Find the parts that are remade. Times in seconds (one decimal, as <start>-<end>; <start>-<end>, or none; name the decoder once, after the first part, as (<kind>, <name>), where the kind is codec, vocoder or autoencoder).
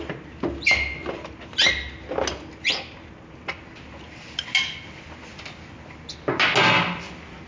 none